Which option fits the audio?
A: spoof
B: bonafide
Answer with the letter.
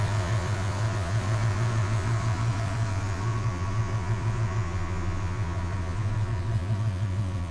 A